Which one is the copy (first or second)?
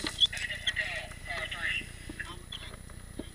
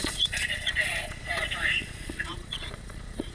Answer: second